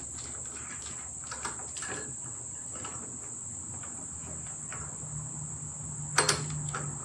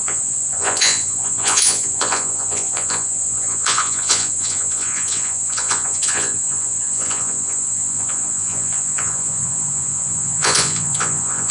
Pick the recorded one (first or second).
first